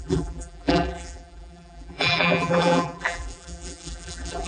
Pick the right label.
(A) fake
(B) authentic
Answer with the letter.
A